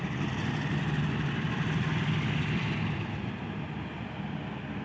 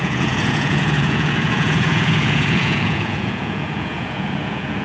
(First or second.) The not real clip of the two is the second